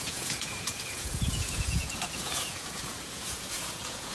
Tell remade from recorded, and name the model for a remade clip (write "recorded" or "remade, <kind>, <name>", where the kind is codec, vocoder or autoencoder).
remade, vocoder, Vocos